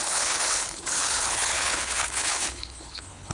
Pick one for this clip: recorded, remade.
remade